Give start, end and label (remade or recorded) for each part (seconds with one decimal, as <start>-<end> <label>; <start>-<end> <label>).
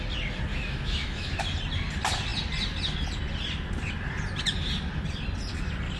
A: 0.0-0.5 recorded; 0.5-1.4 remade; 1.4-6.0 recorded